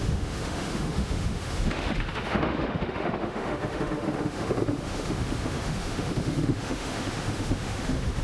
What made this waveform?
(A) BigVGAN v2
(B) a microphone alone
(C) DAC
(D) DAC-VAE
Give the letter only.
D